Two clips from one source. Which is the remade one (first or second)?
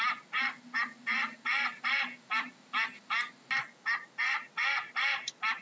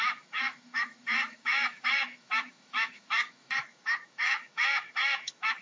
second